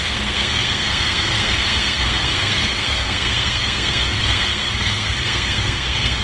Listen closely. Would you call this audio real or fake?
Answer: fake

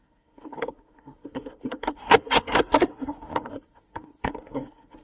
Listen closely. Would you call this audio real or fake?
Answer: fake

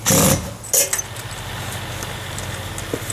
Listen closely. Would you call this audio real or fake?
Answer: real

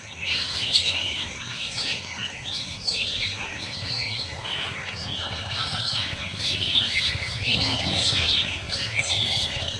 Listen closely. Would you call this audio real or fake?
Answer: fake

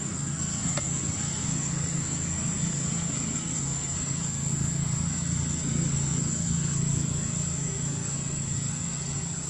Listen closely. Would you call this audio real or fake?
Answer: fake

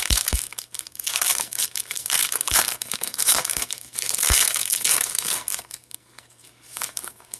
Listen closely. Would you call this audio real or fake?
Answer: fake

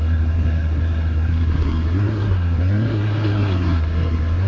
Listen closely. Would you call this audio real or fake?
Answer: fake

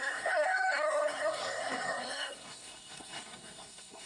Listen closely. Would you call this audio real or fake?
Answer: fake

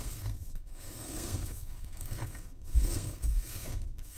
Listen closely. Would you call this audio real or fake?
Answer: fake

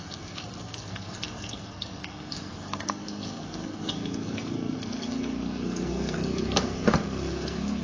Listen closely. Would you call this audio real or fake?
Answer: fake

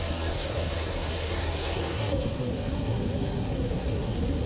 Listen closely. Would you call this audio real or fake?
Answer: fake